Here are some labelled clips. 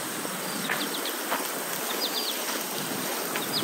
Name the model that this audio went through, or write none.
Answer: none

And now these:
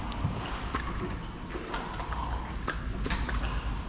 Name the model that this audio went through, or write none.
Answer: none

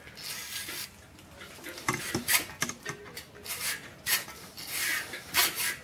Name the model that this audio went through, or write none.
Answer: none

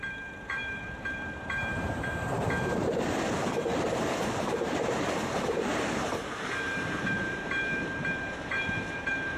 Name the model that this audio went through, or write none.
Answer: vocoder, BigVGAN v2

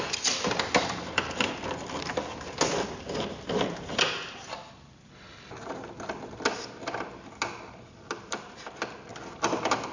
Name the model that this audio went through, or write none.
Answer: none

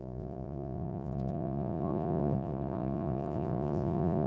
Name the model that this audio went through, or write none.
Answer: vocoder, Vocos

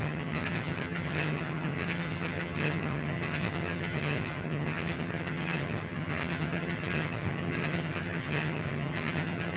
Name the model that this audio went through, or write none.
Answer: vocoder, HiFi-GAN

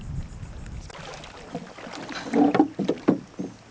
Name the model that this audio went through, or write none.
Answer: none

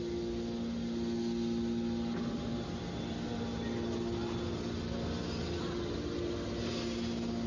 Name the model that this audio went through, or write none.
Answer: none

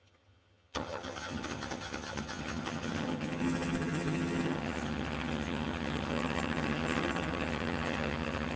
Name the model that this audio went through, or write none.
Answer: vocoder, HiFi-GAN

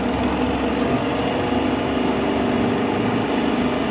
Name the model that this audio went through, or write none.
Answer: none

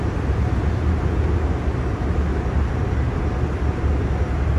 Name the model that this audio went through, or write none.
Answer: none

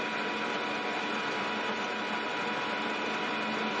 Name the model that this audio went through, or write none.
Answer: none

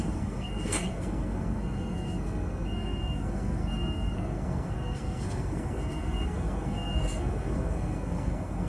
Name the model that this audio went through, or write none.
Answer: codec, SNAC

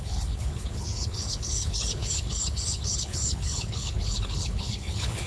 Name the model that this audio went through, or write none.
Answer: codec, HILCodec